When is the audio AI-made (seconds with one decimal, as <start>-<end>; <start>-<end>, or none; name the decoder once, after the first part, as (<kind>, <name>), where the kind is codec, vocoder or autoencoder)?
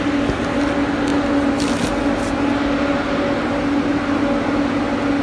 none